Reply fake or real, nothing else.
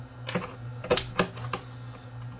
real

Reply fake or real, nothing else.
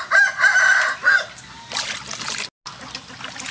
real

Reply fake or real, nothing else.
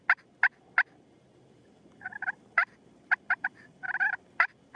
real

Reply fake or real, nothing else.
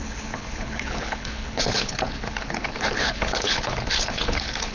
fake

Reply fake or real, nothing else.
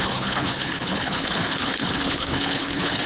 fake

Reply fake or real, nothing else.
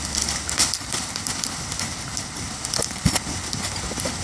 fake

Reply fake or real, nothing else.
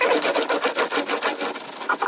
real